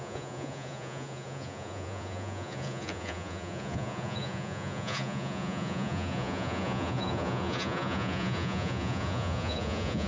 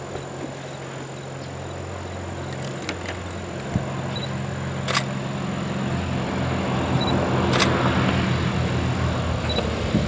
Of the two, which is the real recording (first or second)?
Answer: second